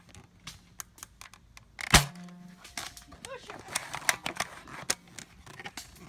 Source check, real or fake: real